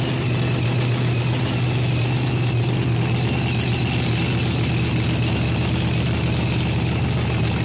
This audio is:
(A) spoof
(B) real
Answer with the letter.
B